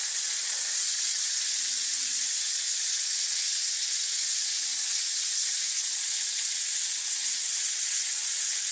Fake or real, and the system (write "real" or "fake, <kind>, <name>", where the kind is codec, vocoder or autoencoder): fake, vocoder, WaveNeXt